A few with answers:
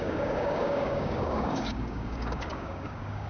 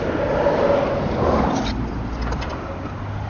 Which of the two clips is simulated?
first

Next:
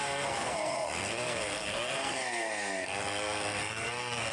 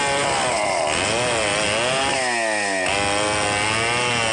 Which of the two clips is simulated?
first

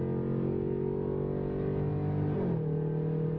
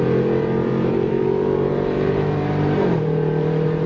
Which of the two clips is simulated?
second